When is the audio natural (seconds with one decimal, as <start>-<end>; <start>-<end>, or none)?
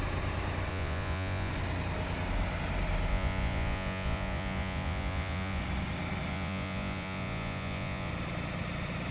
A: 0.0-0.7; 1.5-3.1; 5.6-6.3; 8.1-9.1